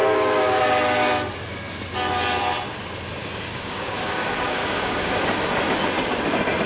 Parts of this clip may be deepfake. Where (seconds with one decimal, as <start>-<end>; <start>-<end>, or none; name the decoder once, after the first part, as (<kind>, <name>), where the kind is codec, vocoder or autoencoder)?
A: 0.0-0.6 (codec, DAC); 3.2-5.2